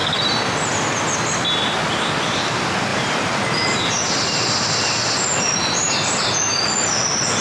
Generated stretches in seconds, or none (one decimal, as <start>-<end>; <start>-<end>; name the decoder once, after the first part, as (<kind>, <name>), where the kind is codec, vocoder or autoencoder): 2.9-4.0 (vocoder, BigVGAN v2)